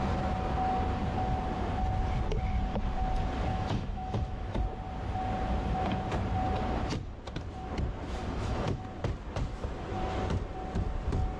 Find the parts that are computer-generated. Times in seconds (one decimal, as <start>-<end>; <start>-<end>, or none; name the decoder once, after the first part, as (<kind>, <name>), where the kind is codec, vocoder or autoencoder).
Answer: 3.5-4.6 (autoencoder, DAC-VAE); 8.2-8.8